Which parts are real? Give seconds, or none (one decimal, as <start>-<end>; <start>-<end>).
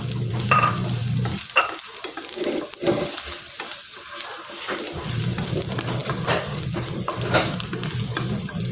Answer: 1.0-2.6